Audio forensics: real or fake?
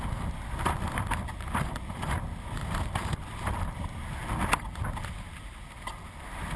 real